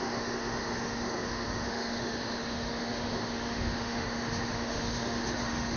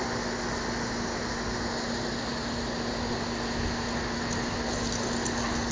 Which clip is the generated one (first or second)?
first